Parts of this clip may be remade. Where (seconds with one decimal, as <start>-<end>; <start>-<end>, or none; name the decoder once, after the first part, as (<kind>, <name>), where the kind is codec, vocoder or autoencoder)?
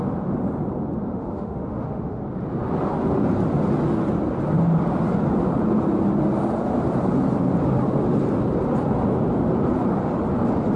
1.1-2.2 (autoencoder, DAC-VAE)